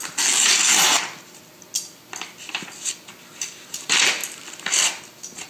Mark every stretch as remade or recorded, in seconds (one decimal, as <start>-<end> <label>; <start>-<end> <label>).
0.0-5.5 recorded